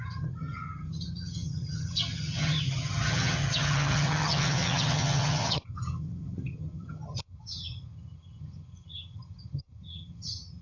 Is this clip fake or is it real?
fake